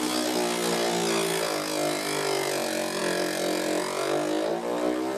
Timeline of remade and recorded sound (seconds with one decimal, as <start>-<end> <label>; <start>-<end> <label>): 0.0-5.2 recorded